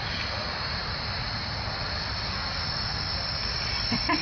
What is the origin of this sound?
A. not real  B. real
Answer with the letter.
B